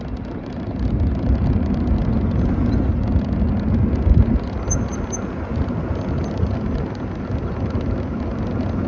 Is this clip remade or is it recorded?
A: recorded